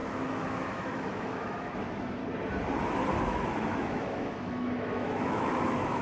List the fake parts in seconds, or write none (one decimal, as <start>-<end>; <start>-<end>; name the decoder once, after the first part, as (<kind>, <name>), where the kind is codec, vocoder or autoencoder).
0.0-2.2 (autoencoder, DAC-VAE); 3.2-6.0